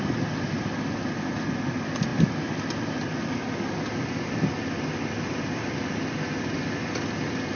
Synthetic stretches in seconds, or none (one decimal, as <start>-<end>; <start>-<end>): none